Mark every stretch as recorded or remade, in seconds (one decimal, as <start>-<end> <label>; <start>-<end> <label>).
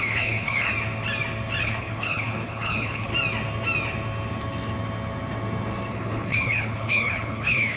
0.0-0.7 remade; 0.7-1.6 recorded; 1.6-3.1 remade; 3.1-5.9 recorded; 5.9-7.8 remade